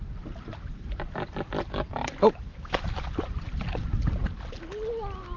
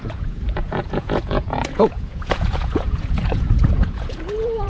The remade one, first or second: second